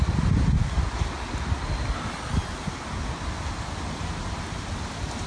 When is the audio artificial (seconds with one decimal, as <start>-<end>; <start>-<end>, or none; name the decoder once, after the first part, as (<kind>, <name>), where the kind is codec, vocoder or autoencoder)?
none